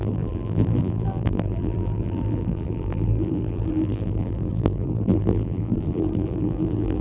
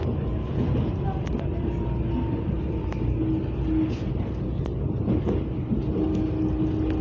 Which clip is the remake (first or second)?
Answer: first